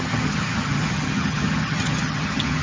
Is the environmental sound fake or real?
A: fake